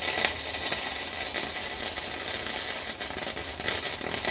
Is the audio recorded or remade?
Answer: recorded